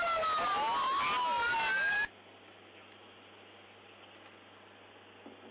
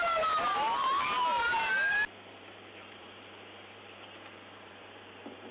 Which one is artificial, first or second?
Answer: second